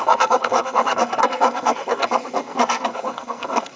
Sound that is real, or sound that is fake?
fake